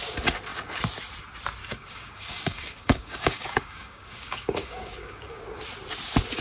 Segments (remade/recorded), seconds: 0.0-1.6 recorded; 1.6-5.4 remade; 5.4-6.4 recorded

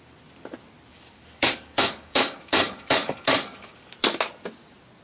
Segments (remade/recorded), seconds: 0.0-0.9 recorded; 0.9-3.9 remade; 3.9-5.0 recorded

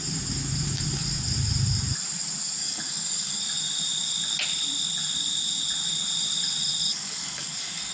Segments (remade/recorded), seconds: 0.0-2.6 recorded; 2.6-3.4 remade; 3.4-6.9 recorded; 6.9-7.9 remade

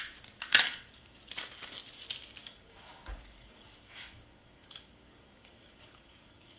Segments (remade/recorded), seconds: 0.0-0.5 recorded; 0.5-1.2 remade; 1.2-2.4 recorded; 2.4-6.6 remade

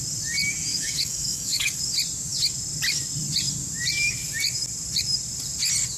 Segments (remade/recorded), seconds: 0.0-0.7 recorded; 0.7-1.8 remade; 1.8-6.0 recorded